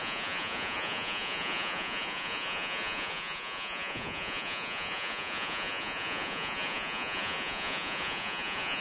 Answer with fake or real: fake